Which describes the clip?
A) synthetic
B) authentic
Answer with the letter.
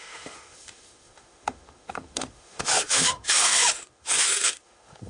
A